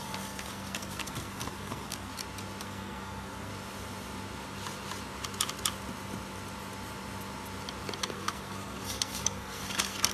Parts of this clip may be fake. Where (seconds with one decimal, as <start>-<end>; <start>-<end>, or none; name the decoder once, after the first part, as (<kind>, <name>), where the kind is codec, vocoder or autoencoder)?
0.0-2.1 (codec, SNAC); 2.6-3.5; 8.0-10.1

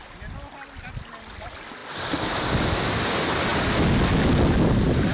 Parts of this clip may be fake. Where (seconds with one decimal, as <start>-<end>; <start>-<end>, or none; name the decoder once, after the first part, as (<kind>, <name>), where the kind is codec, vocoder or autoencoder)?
none

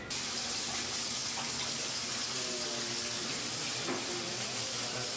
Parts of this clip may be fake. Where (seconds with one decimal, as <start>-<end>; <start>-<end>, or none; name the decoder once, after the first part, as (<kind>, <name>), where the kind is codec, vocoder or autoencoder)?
none

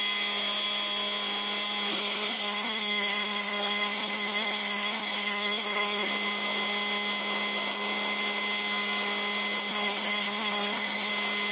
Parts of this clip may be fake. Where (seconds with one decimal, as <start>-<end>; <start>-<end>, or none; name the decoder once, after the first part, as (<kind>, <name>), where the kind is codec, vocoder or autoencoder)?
1.9-6.1 (codec, SNAC); 9.7-11.1

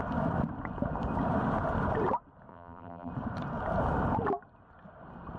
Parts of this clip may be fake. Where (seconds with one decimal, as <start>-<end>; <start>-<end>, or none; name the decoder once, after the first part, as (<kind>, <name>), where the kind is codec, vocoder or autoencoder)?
2.5-3.1 (vocoder, BigVGAN v2)

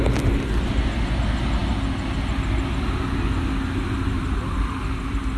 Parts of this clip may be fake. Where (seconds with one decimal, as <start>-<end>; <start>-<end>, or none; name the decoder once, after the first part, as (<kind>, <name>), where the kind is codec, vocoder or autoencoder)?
none

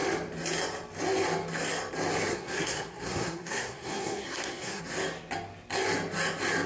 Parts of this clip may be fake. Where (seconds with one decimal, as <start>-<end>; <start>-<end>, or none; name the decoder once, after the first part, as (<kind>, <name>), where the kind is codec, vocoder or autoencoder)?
2.3-4.8 (codec, SNAC)